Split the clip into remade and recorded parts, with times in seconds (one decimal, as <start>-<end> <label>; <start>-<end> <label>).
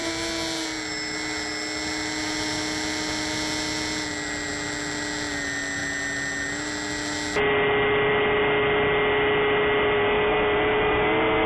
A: 0.0-11.5 recorded